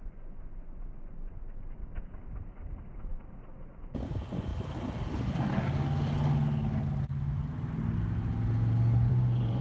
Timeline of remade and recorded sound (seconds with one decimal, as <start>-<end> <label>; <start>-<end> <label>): 0.0-1.8 remade; 1.8-3.6 recorded; 3.6-4.5 remade; 4.5-9.1 recorded; 9.1-9.6 remade